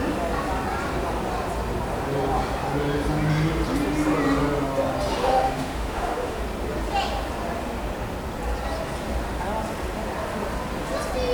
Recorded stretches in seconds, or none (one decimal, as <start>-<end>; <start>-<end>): 0.0-5.2; 6.4-11.3